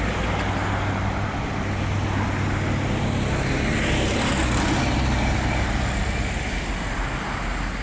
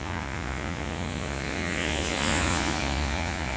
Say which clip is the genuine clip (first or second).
first